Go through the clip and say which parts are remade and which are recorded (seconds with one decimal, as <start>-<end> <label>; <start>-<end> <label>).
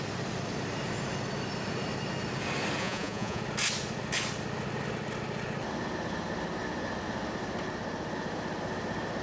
0.0-2.8 recorded; 2.8-3.4 remade; 3.4-9.2 recorded